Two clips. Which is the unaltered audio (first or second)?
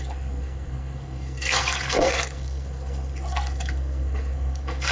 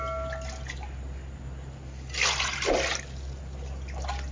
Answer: second